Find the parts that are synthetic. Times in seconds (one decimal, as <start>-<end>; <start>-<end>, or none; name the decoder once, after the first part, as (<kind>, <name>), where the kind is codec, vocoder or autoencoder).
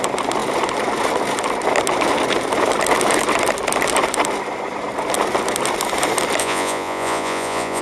6.4-7.8 (vocoder, Vocos)